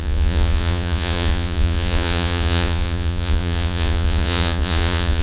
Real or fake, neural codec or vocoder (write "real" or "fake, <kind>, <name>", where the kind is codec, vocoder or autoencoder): fake, vocoder, Vocos